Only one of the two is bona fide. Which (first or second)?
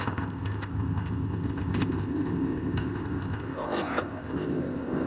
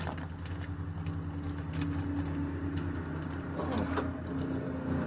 second